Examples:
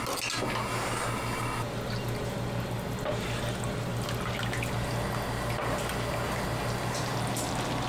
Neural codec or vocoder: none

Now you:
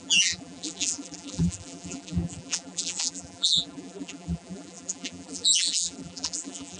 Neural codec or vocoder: vocoder, BigVGAN v2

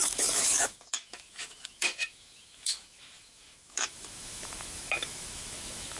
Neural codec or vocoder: autoencoder, DAC-VAE